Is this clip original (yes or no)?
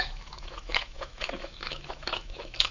no